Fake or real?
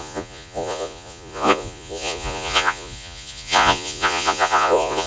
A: fake